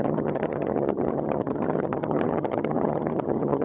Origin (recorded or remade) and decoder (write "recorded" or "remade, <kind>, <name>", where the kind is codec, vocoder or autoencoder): remade, vocoder, HiFi-GAN